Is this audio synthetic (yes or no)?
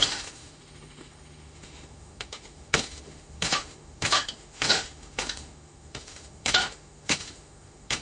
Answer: yes